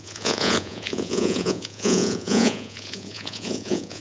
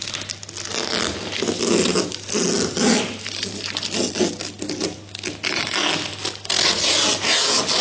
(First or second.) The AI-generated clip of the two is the first